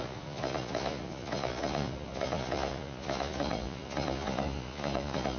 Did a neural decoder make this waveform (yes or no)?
yes